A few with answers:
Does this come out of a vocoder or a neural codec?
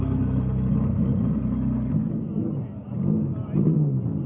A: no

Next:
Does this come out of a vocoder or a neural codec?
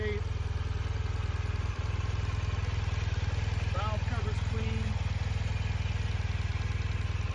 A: no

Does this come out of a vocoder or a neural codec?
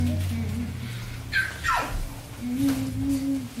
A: no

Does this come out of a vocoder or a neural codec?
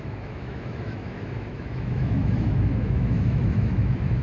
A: yes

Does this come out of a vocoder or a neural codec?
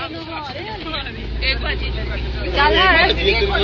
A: no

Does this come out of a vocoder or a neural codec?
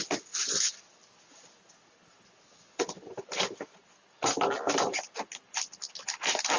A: no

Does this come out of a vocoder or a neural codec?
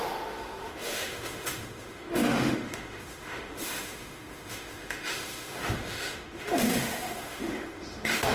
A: yes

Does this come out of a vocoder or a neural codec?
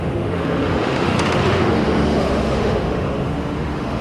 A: yes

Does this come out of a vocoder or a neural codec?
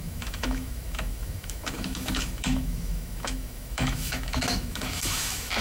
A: yes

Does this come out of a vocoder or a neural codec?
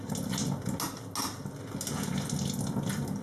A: no